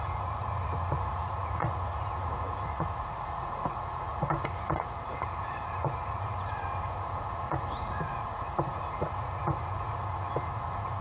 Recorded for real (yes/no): no